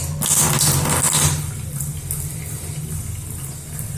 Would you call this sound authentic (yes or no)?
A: yes